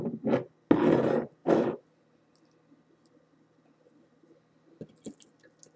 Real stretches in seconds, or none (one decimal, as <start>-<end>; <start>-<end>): 0.0-5.8